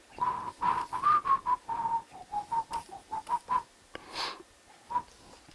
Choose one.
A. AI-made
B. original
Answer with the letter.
B